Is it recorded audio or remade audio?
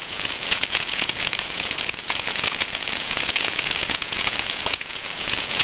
remade